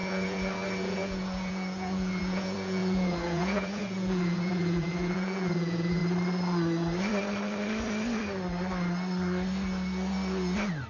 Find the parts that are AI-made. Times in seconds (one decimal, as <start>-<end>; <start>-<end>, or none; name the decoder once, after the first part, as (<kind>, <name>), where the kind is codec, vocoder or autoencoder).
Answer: 0.0-6.0 (vocoder, Vocos)